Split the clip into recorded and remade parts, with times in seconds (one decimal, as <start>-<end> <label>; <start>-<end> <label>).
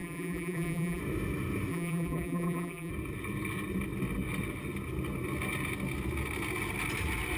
0.0-1.0 remade; 1.0-1.7 recorded; 1.7-2.9 remade; 2.9-7.4 recorded